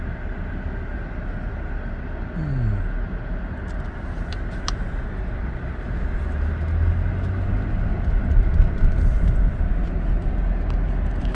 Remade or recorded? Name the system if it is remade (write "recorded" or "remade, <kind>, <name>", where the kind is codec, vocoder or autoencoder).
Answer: recorded